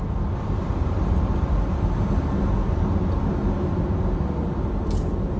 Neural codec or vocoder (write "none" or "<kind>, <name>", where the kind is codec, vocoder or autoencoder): none